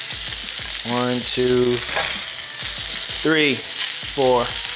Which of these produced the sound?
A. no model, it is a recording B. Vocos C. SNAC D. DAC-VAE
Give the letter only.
A